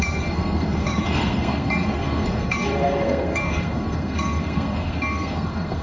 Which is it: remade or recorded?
remade